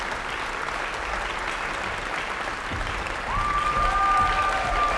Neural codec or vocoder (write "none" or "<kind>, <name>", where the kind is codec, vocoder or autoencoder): none